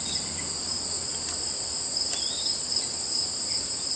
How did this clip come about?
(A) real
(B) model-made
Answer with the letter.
A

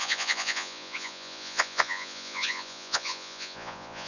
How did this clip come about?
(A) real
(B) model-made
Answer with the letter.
B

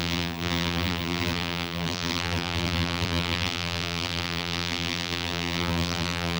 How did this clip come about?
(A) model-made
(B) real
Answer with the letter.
A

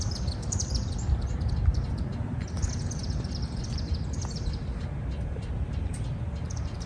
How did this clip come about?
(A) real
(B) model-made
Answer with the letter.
A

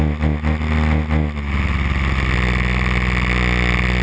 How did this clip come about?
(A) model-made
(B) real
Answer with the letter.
B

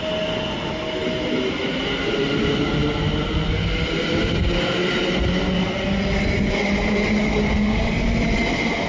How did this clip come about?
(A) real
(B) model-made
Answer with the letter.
A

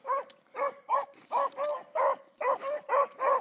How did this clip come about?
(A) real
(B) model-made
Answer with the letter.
B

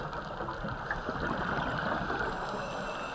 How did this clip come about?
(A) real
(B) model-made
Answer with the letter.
A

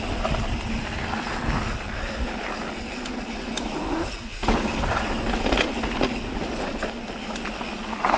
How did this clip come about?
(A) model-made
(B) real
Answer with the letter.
B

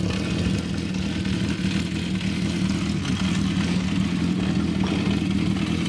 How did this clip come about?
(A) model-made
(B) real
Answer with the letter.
B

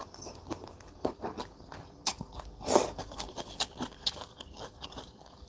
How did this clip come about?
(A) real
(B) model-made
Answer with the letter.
B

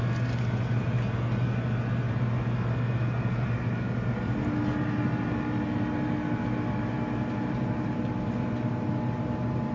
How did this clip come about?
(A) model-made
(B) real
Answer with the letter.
A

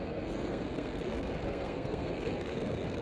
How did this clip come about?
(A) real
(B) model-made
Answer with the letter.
B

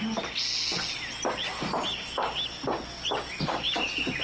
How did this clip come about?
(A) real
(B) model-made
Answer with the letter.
A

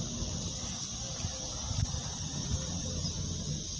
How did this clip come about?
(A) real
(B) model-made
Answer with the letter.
A